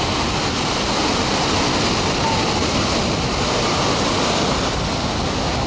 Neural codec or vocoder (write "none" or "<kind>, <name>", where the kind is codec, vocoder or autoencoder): none